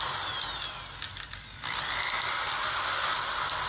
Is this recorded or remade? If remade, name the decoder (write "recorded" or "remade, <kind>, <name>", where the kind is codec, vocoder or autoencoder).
recorded